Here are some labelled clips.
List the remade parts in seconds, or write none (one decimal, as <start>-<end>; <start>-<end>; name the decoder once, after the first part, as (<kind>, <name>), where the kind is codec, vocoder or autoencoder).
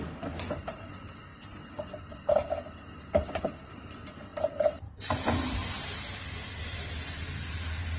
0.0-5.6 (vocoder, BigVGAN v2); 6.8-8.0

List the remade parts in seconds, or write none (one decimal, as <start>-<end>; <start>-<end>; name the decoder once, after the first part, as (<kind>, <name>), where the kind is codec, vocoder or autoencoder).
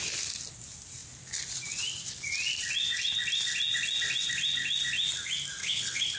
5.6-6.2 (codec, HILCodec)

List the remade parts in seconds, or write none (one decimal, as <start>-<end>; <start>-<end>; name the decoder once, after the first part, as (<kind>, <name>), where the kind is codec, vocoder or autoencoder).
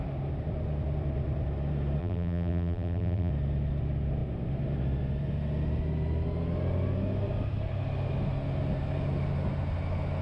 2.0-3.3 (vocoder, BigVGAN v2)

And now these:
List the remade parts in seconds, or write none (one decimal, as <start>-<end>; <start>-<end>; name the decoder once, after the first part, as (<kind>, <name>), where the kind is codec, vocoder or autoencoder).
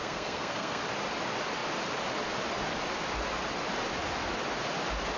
0.0-0.8 (codec, SNAC)